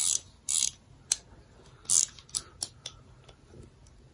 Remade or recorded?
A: recorded